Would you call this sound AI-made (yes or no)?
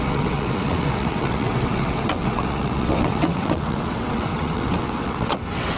yes